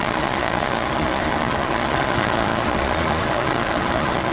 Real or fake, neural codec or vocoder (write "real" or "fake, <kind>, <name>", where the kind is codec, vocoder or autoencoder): fake, vocoder, Vocos